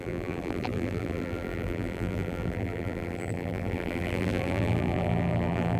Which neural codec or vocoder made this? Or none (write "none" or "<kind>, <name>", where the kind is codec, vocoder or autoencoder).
vocoder, BigVGAN v2